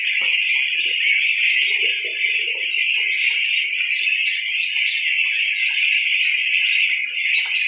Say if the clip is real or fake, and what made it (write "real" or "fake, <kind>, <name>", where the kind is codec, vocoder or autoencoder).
real